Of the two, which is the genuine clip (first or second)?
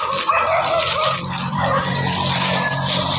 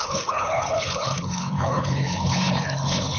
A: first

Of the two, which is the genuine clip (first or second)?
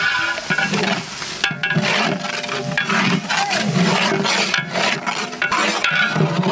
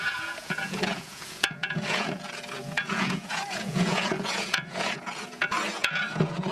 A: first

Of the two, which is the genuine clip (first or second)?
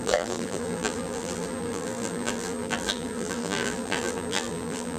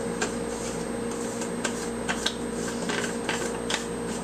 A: second